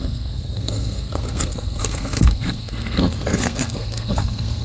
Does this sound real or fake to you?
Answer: fake